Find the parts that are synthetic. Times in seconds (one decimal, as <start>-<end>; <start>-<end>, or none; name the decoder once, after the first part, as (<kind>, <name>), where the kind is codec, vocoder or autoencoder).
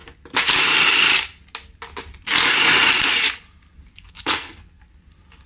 3.9-4.9 (codec, SNAC)